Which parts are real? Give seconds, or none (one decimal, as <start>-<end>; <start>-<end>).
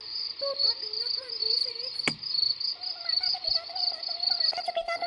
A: 0.0-5.1